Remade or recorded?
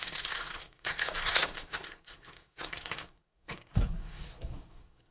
remade